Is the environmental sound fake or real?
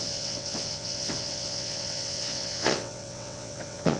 fake